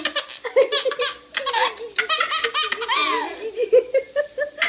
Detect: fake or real real